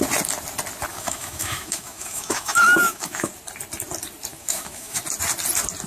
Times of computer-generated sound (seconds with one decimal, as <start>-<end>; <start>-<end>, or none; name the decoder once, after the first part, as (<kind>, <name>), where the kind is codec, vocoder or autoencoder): 0.9-3.3 (autoencoder, DAC-VAE); 4.3-5.0